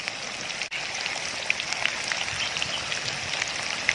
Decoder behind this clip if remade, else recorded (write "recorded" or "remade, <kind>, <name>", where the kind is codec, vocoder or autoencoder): recorded